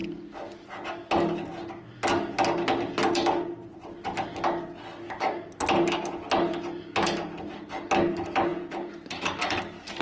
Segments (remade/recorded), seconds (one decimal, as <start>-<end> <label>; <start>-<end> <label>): 0.0-8.5 recorded; 8.5-9.6 remade; 9.6-10.0 recorded